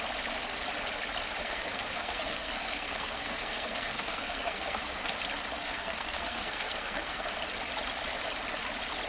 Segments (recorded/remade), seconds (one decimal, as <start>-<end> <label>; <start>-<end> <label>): 0.0-1.4 recorded; 1.4-5.1 remade; 5.1-5.6 recorded; 5.6-7.4 remade; 7.4-9.1 recorded